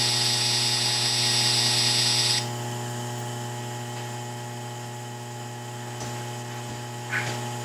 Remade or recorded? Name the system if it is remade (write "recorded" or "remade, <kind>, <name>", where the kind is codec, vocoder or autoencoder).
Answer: recorded